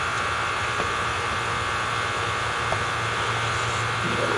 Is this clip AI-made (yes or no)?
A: no